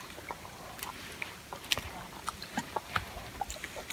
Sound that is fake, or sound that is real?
real